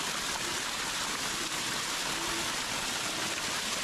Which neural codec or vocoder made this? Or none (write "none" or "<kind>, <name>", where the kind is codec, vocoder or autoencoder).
none